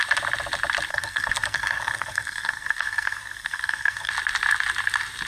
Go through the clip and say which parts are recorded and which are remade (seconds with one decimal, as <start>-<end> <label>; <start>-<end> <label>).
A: 0.0-0.9 recorded; 0.9-4.1 remade; 4.1-5.3 recorded

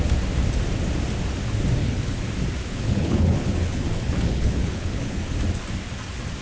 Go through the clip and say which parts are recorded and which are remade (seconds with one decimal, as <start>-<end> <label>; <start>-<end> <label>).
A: 0.0-1.8 recorded; 1.8-2.3 remade; 2.3-2.7 recorded; 2.7-5.2 remade; 5.2-6.4 recorded

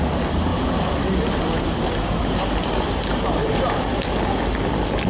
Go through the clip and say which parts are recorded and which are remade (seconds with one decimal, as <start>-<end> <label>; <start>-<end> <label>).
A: 0.0-5.1 recorded

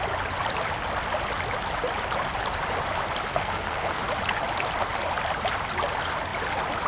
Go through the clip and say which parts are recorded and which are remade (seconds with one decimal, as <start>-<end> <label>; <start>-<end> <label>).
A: 0.0-3.3 recorded; 3.3-4.0 remade; 4.0-6.9 recorded

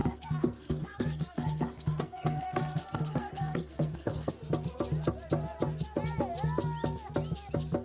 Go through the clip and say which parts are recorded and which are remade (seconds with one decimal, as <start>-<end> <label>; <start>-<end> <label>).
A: 0.0-4.3 remade; 4.3-7.8 recorded

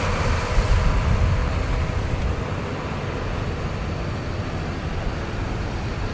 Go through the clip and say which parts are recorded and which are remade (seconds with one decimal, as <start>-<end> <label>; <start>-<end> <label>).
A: 0.0-6.1 recorded